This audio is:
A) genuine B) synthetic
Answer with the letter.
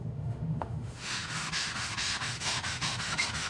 B